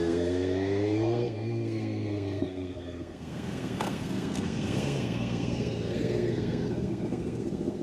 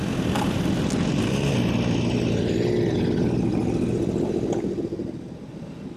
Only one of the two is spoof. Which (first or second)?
first